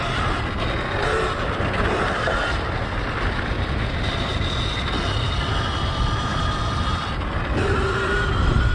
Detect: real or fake real